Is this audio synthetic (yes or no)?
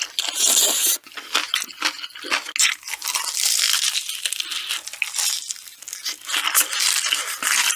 no